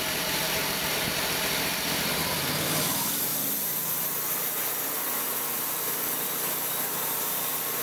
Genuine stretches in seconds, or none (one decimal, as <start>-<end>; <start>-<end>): 3.3-7.2